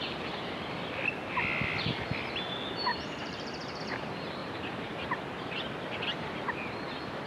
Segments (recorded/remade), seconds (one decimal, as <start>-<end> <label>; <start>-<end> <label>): 0.0-2.9 recorded; 2.9-3.8 remade; 3.8-4.4 recorded; 4.4-5.7 remade; 5.7-7.3 recorded